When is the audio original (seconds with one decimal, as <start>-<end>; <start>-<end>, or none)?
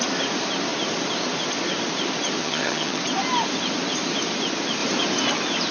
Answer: 0.0-2.4; 3.0-5.7